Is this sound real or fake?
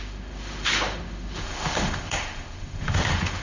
fake